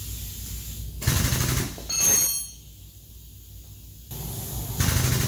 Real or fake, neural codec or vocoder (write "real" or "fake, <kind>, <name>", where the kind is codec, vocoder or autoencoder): real